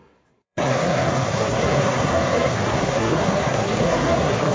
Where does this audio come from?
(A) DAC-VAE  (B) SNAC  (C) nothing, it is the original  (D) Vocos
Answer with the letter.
B